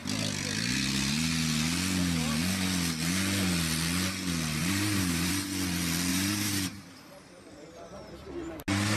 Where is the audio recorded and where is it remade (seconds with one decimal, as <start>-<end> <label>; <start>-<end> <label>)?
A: 0.0-4.6 recorded; 4.6-5.3 remade; 5.3-6.1 recorded; 6.1-8.3 remade; 8.3-9.0 recorded